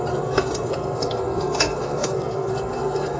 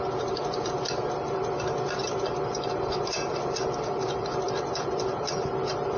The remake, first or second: first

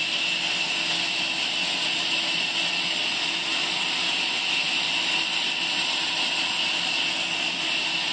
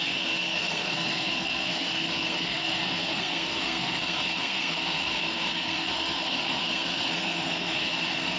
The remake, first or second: second